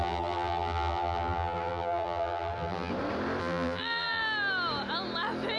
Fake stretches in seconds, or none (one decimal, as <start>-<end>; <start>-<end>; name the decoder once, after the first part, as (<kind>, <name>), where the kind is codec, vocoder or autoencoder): 0.0-2.9 (vocoder, BigVGAN v2); 3.4-4.2